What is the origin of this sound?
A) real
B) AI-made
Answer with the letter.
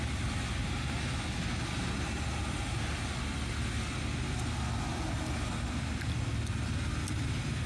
A